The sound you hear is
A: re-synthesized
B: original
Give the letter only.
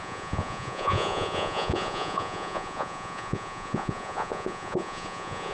A